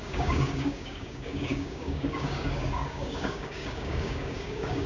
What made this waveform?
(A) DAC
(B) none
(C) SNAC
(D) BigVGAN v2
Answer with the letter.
A